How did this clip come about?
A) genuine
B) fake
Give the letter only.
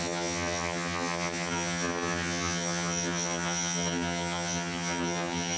B